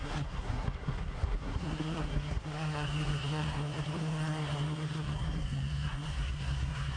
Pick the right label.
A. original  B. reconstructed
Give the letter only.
B